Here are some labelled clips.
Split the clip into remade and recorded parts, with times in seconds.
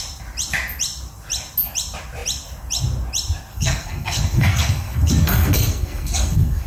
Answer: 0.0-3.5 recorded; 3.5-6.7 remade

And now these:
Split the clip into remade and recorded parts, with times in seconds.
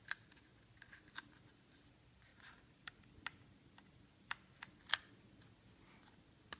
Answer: 0.0-2.3 recorded; 2.3-2.9 remade; 2.9-6.6 recorded